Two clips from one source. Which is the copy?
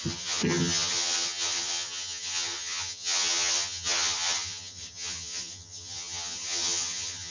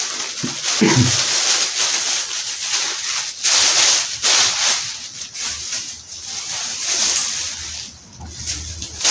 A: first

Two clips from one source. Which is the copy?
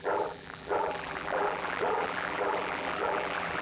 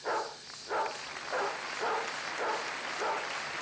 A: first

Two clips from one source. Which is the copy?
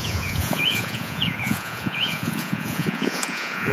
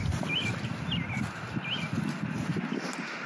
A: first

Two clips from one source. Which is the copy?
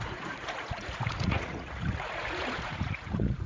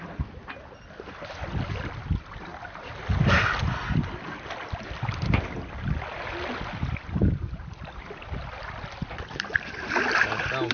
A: first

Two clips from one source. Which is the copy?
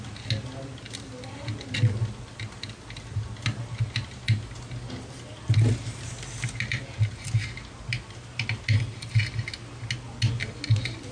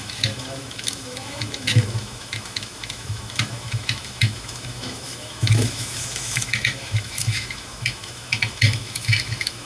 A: second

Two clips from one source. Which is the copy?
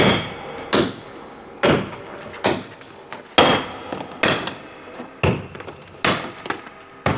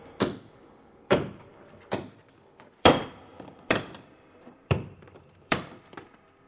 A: second